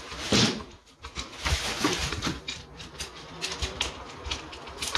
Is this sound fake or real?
real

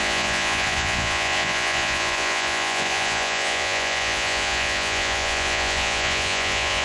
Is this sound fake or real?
fake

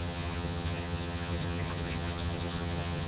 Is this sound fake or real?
fake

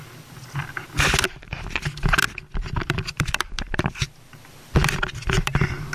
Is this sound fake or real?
real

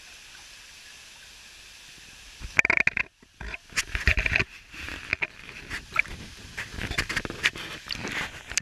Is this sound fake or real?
real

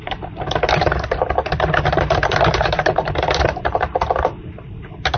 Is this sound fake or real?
fake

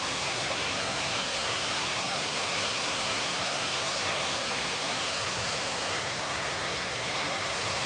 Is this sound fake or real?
fake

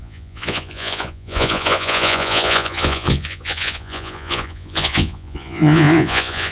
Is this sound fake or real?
fake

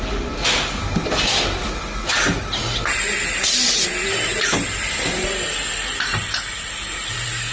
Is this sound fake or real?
real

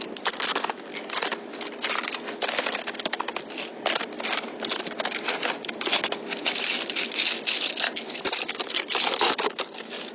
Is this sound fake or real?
real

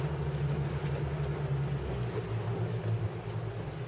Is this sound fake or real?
real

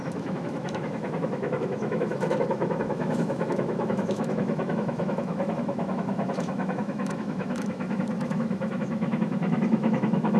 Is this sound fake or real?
fake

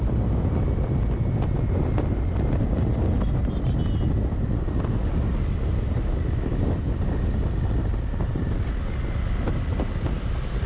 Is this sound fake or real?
real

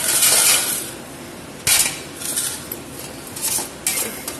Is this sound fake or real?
real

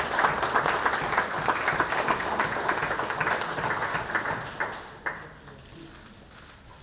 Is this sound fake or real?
real